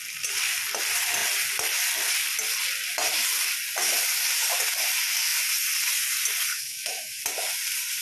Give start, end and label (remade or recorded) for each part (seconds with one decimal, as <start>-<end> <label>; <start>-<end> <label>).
0.0-6.5 recorded; 6.5-7.2 remade; 7.2-8.0 recorded